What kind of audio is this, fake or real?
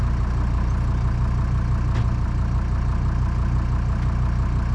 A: real